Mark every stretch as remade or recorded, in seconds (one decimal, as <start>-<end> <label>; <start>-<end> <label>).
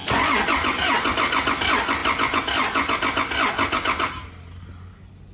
0.0-5.3 recorded